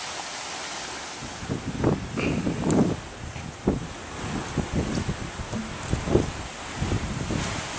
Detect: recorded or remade recorded